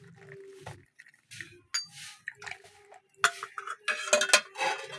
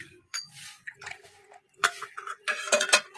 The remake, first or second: second